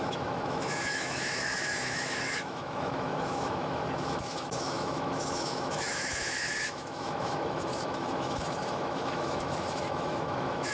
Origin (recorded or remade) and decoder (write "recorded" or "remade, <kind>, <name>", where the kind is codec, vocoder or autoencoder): remade, autoencoder, DAC-VAE